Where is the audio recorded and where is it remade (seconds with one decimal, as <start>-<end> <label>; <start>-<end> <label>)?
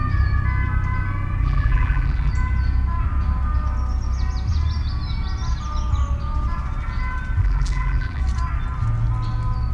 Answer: 0.0-1.4 recorded; 1.4-2.3 remade; 2.3-7.4 recorded; 7.4-8.2 remade; 8.2-9.7 recorded